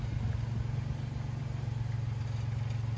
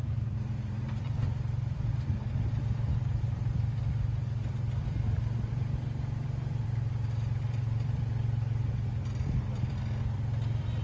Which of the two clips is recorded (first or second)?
first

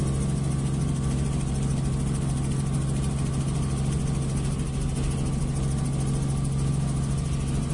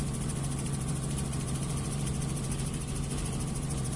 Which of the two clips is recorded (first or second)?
first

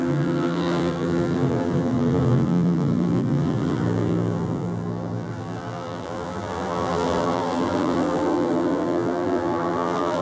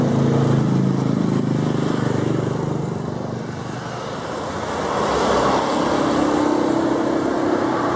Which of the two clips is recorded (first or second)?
second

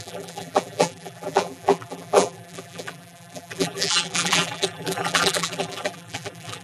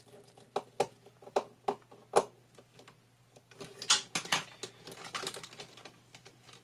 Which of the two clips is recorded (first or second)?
second